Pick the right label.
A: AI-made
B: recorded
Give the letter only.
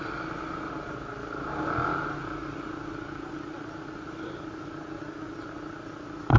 B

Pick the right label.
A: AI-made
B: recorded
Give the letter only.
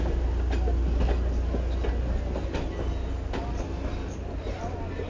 B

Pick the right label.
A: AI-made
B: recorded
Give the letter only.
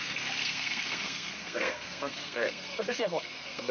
A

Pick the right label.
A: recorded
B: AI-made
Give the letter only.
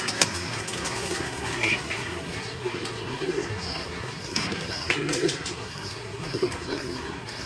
B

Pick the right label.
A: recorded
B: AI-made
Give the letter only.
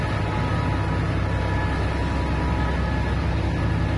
A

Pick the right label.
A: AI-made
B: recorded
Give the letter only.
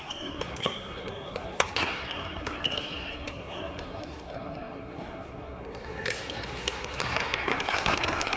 A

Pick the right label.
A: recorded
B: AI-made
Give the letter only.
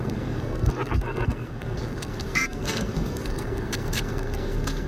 B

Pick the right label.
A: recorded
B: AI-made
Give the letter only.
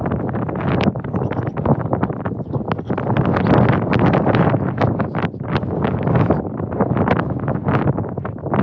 A